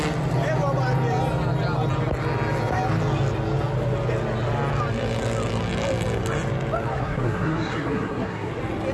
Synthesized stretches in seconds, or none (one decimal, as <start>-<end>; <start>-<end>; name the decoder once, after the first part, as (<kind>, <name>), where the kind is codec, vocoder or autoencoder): 6.9-8.5 (codec, SNAC)